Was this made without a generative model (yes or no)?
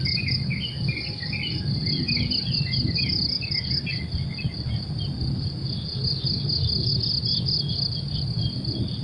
yes